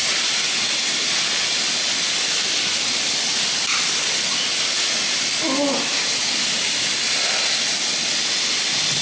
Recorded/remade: recorded